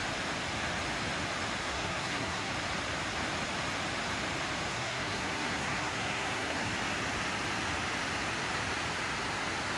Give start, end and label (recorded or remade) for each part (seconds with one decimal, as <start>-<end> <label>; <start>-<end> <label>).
0.0-1.6 recorded; 1.6-2.5 remade; 2.5-4.7 recorded; 4.7-6.7 remade; 6.7-9.8 recorded